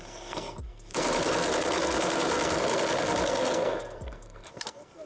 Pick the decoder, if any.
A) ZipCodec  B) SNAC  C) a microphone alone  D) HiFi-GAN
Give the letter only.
B